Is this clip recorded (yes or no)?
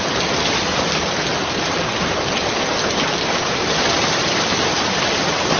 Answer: yes